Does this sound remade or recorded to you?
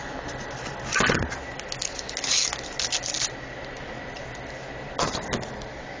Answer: recorded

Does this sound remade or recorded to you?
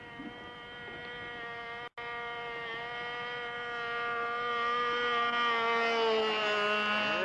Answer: recorded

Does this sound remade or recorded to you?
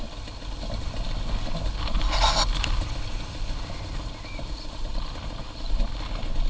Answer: recorded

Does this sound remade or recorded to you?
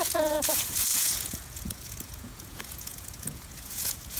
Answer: remade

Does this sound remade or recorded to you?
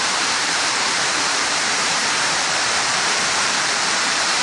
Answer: remade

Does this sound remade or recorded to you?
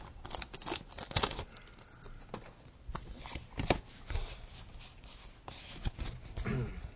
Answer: recorded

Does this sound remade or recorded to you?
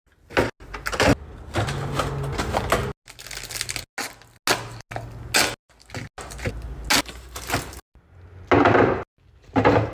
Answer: recorded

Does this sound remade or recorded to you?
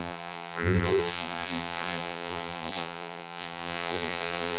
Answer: remade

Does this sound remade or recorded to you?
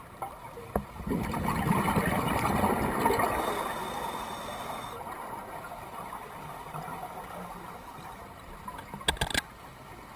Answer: recorded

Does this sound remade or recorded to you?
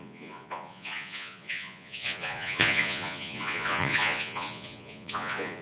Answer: remade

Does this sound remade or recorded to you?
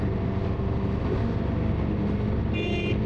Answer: recorded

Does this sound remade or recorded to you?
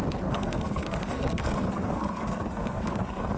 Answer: remade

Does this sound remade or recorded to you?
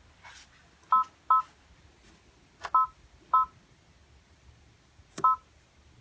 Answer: recorded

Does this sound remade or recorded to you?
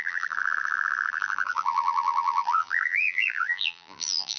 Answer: remade